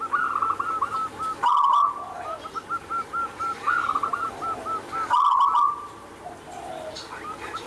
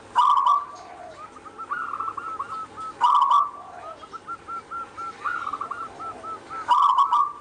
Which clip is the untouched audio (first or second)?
second